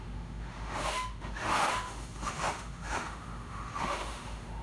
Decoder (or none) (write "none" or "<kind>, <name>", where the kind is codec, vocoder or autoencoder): autoencoder, DAC-VAE